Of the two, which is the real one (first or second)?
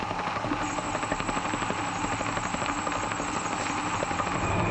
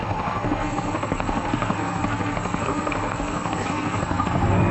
first